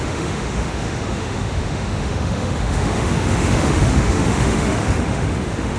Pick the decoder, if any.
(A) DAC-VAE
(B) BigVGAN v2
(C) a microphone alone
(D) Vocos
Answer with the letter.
A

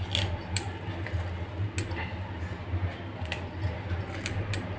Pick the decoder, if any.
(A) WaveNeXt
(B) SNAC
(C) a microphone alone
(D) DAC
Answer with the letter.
C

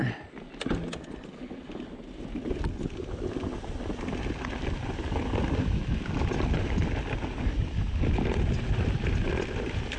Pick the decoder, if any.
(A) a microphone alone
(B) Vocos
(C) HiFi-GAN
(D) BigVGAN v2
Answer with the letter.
A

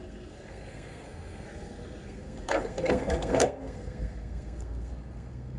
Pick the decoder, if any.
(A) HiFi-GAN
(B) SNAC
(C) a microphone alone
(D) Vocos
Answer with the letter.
B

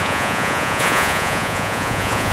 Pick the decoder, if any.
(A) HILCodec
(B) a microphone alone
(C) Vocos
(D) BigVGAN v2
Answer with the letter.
C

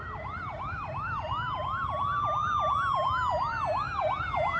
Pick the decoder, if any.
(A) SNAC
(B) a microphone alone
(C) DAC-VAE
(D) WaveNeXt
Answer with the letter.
B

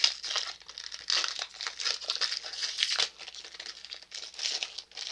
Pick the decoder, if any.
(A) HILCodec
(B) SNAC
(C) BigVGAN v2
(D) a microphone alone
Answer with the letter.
D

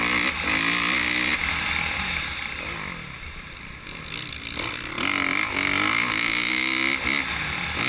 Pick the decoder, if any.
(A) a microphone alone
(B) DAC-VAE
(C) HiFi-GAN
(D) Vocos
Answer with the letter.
A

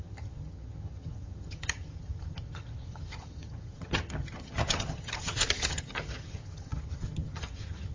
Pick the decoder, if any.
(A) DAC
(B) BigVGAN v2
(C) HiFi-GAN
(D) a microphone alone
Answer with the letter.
C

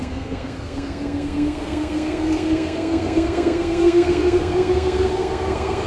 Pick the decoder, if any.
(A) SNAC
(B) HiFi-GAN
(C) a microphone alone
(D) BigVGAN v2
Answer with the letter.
A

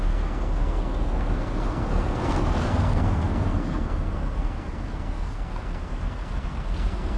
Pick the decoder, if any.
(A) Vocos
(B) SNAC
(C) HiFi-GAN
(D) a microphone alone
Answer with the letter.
B